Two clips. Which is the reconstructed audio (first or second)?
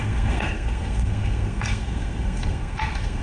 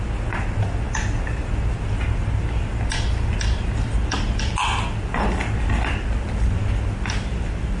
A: first